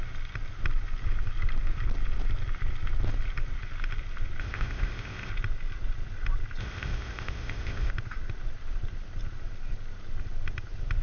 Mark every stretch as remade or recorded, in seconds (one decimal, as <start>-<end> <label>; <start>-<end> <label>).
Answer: 0.0-4.4 recorded; 4.4-5.3 remade; 5.3-6.6 recorded; 6.6-7.9 remade; 7.9-11.0 recorded